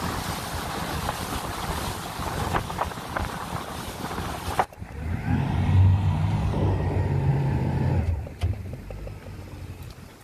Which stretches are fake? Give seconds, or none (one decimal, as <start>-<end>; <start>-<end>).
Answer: 7.3-7.9